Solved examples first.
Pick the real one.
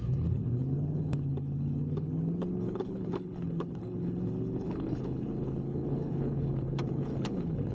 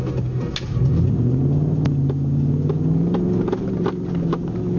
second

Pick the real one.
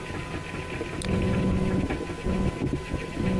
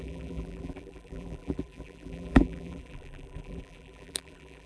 first